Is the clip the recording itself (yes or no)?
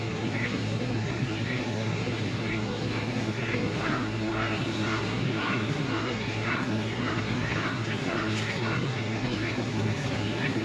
no